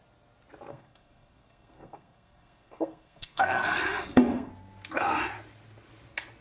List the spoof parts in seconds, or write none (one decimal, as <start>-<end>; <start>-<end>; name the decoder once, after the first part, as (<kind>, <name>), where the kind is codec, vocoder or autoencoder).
0.7-4.5 (codec, SNAC)